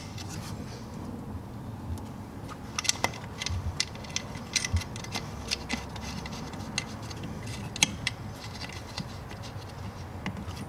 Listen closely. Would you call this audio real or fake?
real